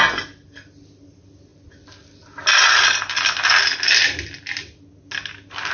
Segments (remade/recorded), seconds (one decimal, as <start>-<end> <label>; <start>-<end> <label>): 0.0-5.7 recorded